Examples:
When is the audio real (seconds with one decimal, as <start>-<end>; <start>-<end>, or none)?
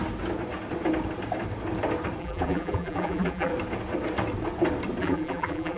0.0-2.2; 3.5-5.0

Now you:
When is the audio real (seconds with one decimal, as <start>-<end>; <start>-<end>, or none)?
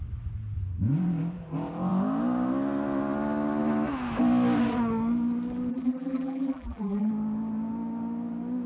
0.0-5.7; 7.1-8.7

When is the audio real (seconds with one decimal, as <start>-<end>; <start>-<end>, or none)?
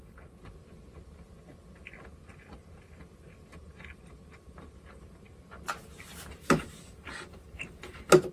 0.0-3.5; 5.2-8.3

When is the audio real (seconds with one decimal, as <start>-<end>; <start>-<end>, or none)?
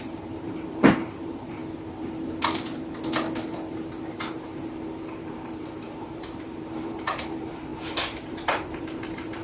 1.6-5.2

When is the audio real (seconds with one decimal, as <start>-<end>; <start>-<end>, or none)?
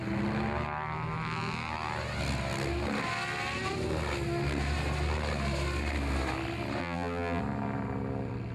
0.0-6.8; 7.4-8.5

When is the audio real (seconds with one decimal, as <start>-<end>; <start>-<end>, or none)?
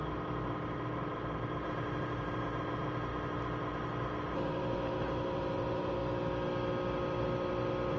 3.1-4.3; 6.0-8.0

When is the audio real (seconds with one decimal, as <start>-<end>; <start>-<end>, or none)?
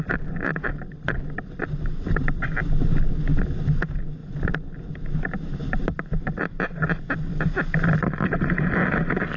0.0-9.4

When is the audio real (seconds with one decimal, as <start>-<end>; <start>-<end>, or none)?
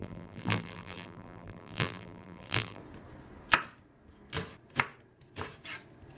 2.8-6.2